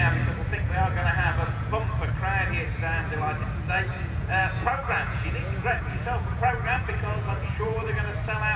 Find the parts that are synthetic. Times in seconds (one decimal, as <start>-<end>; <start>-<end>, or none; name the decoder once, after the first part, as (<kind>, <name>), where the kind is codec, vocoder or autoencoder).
0.5-1.7 (vocoder, Vocos); 3.9-7.9